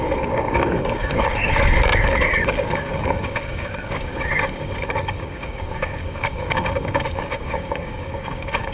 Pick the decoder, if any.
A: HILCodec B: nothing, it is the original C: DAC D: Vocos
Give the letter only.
C